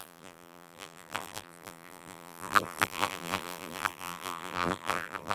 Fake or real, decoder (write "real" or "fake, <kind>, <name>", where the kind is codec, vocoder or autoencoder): fake, vocoder, BigVGAN v2